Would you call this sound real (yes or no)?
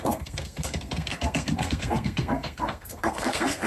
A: no